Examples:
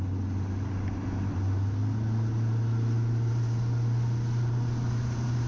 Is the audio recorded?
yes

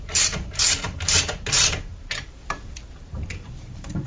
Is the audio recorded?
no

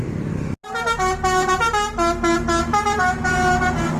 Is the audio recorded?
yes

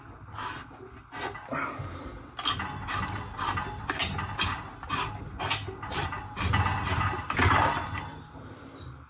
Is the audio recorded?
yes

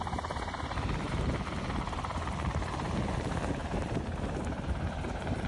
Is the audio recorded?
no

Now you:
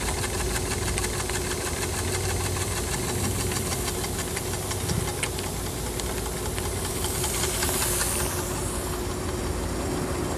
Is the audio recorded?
yes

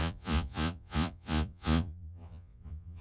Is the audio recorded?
no